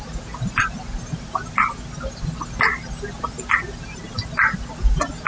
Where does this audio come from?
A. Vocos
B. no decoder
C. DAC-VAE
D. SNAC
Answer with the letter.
B